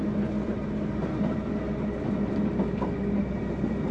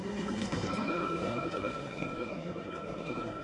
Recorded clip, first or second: first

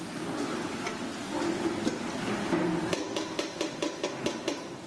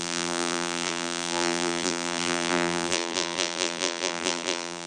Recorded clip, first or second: first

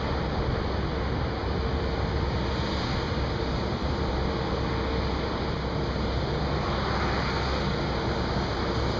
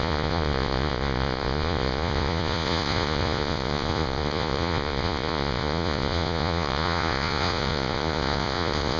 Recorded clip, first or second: first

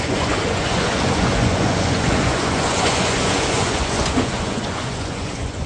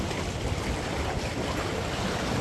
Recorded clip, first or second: second